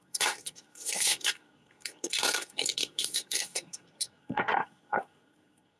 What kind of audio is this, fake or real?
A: fake